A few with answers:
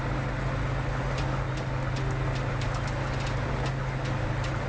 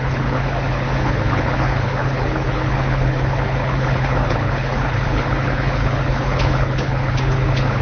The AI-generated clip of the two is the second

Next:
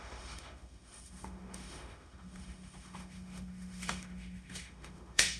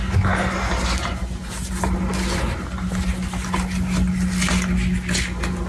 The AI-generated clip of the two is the first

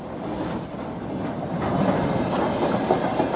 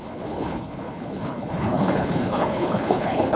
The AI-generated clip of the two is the second